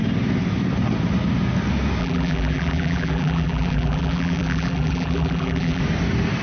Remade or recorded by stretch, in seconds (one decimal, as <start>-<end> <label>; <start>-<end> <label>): 0.0-2.0 recorded; 2.0-5.8 remade; 5.8-6.4 recorded